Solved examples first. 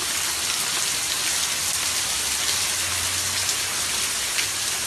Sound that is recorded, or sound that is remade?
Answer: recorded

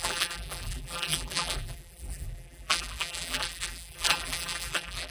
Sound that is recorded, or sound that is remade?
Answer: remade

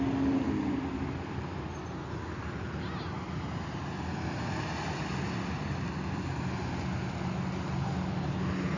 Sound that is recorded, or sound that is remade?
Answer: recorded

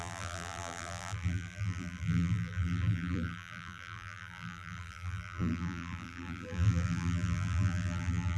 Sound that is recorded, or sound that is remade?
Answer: remade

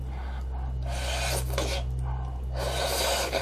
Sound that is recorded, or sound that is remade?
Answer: recorded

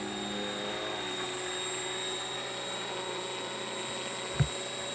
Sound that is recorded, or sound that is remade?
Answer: recorded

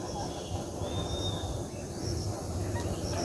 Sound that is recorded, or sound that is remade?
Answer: recorded